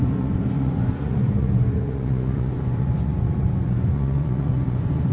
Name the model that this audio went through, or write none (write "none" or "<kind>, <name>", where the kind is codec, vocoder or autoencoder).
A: vocoder, Vocos